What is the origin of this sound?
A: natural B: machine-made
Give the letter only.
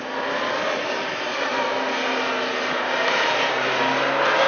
A